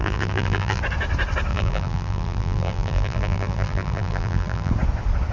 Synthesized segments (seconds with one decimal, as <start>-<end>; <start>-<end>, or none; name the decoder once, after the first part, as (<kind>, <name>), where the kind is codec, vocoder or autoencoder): 0.0-0.8 (vocoder, BigVGAN v2); 1.5-4.7